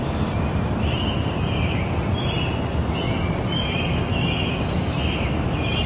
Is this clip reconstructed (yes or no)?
yes